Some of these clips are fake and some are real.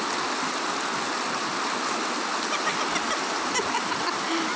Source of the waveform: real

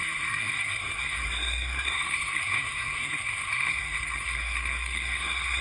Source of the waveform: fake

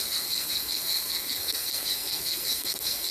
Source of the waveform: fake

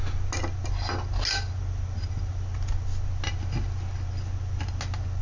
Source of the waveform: real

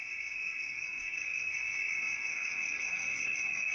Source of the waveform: fake